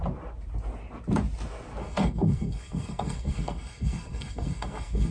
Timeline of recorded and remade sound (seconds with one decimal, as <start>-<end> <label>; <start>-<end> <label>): 0.0-1.8 recorded; 1.8-5.1 remade